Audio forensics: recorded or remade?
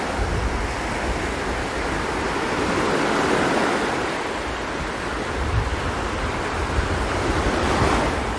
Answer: remade